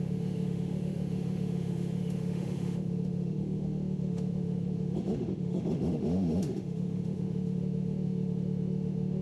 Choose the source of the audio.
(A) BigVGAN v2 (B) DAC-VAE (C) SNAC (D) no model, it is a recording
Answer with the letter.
B